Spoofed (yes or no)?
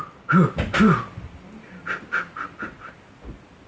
yes